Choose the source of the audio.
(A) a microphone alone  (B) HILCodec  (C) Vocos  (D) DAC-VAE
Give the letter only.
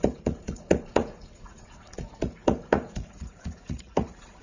C